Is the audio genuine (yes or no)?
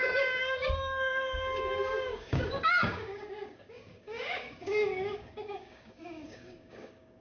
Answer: no